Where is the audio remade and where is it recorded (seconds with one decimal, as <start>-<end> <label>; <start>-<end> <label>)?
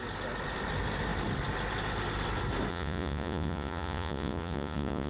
0.0-2.7 recorded; 2.7-5.1 remade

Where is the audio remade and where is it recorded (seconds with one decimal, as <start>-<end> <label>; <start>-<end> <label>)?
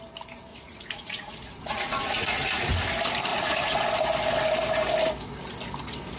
0.0-0.5 recorded; 0.5-2.7 remade; 2.7-3.3 recorded; 3.3-3.9 remade; 3.9-6.2 recorded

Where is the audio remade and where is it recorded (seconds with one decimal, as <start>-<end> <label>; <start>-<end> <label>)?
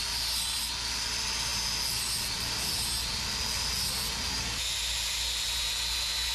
0.0-6.3 recorded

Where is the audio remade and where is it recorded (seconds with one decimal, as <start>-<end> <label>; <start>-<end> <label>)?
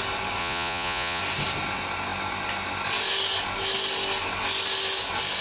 0.0-0.4 recorded; 0.4-1.2 remade; 1.2-5.4 recorded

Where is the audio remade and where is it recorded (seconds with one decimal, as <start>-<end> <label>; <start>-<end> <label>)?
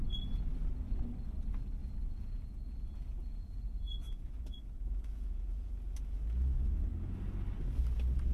0.0-1.8 recorded; 1.8-5.7 remade; 5.7-8.3 recorded